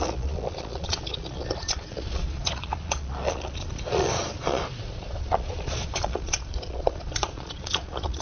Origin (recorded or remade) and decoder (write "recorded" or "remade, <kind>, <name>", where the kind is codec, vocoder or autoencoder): remade, vocoder, Vocos